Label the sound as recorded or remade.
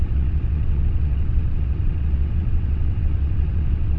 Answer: remade